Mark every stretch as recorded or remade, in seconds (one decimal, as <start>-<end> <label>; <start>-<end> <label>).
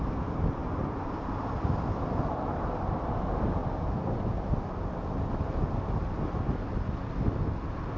0.0-8.0 recorded